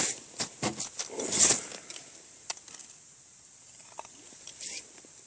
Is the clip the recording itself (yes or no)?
yes